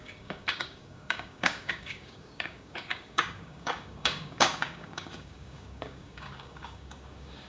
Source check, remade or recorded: remade